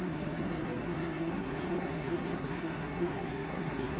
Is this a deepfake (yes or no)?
yes